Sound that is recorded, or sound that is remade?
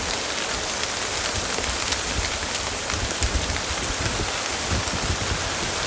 recorded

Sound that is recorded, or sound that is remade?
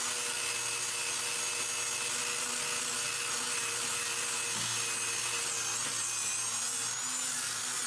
recorded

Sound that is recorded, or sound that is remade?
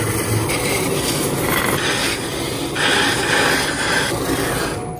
recorded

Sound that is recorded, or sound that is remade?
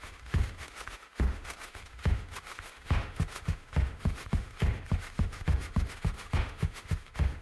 remade